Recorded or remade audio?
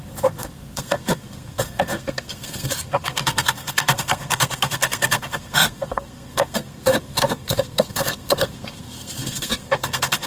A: remade